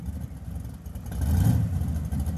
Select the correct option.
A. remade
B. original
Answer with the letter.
B